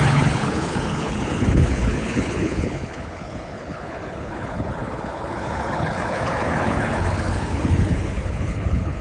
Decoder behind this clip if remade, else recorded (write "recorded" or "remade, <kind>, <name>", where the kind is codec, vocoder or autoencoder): remade, codec, HILCodec